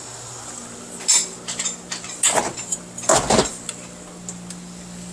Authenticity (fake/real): real